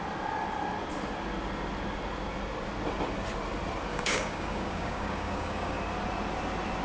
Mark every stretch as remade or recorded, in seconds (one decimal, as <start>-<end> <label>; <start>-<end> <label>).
0.0-3.9 recorded; 3.9-5.8 remade; 5.8-6.8 recorded